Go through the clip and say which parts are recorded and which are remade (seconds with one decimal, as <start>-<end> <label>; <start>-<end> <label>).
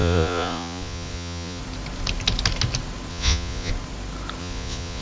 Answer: 0.0-1.6 remade; 1.6-3.1 recorded; 3.1-3.7 remade; 3.7-4.4 recorded; 4.4-5.0 remade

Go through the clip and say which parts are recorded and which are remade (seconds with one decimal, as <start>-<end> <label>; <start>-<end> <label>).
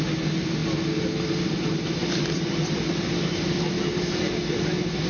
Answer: 0.0-5.1 recorded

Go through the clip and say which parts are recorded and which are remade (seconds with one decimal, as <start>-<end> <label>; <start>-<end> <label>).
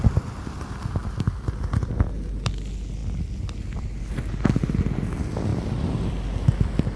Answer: 0.0-1.0 recorded; 1.0-2.5 remade; 2.5-3.0 recorded; 3.0-3.9 remade; 3.9-5.5 recorded; 5.5-6.3 remade; 6.3-7.0 recorded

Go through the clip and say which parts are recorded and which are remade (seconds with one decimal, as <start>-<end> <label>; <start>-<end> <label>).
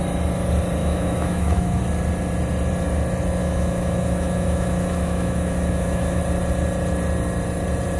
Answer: 0.0-0.8 recorded; 0.8-1.8 remade; 1.8-3.4 recorded; 3.4-6.2 remade; 6.2-8.0 recorded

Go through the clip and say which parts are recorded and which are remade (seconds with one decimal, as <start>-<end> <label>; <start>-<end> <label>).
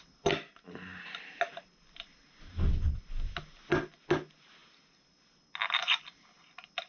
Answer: 0.0-6.9 recorded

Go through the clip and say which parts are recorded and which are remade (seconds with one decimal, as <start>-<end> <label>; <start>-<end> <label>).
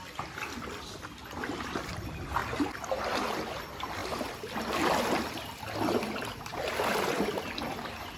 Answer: 0.0-8.2 recorded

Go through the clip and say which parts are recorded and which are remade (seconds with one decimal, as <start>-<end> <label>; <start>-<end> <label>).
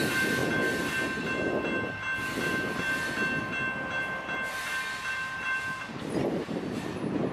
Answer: 0.0-7.3 recorded